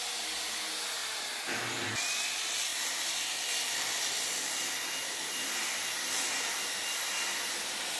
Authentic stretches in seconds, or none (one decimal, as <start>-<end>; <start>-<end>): 0.0-1.0; 1.6-2.7; 6.5-8.0